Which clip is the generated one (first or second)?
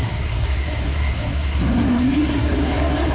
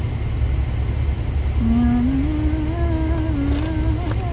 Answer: first